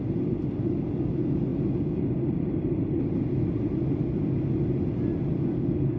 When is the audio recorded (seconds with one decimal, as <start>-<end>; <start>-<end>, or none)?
0.0-6.0

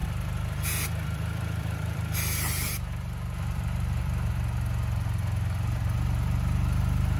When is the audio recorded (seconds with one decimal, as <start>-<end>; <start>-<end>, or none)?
4.3-7.2

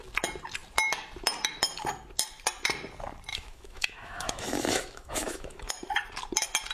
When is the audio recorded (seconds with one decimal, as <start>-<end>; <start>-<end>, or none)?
0.0-3.3; 5.7-6.7

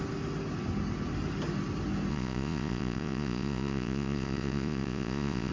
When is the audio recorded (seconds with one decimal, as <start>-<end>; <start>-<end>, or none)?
0.0-2.1

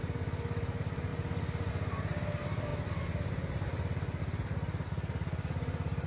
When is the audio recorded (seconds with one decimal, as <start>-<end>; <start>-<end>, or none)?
0.0-6.1

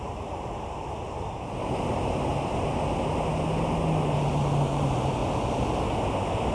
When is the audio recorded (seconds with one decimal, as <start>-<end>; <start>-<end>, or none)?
2.3-4.3; 5.2-6.5

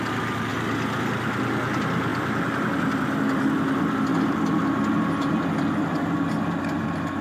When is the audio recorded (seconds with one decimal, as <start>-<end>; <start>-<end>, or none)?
0.0-7.2

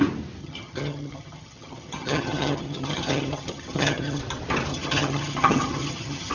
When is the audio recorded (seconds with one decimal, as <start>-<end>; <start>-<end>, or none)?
0.0-0.4; 4.2-4.7